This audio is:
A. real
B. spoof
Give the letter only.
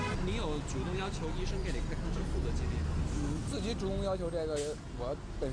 A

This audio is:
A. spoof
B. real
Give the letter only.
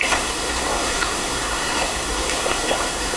A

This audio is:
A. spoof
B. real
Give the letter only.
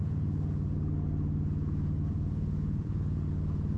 A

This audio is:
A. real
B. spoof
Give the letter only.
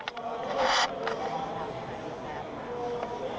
A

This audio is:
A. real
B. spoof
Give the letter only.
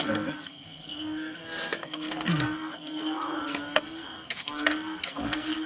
B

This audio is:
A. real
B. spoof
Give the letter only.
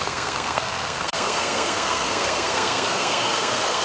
B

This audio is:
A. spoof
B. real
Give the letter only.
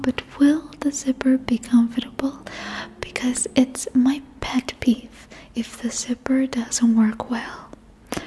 B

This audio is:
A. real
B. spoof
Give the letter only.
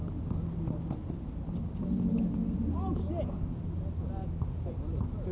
A